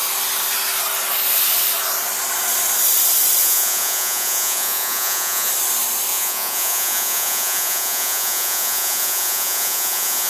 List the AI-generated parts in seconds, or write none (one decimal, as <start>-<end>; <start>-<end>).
3.4-5.5; 6.1-10.3